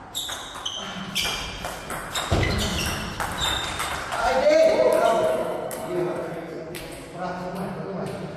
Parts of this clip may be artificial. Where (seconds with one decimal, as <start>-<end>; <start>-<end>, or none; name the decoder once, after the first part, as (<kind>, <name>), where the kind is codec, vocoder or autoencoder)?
5.3-6.8 (codec, SNAC)